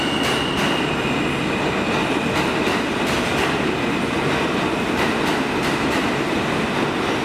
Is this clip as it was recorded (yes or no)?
yes